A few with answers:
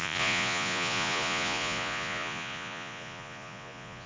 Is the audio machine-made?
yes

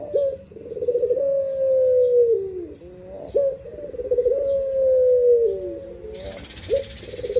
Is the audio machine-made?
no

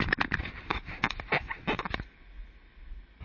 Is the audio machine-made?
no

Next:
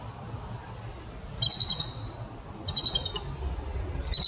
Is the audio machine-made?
no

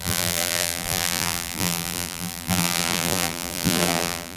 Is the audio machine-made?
yes